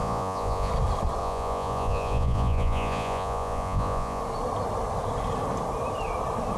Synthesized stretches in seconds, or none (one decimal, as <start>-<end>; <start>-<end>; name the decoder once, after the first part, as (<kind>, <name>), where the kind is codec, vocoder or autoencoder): 0.0-0.7 (vocoder, Vocos); 1.2-4.2